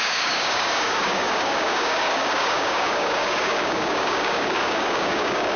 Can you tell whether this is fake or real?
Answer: fake